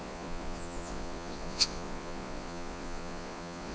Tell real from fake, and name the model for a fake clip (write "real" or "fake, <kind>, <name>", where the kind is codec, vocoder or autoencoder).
fake, vocoder, Vocos